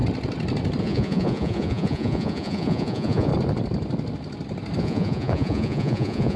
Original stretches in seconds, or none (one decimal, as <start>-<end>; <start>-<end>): 0.0-0.8; 3.3-4.8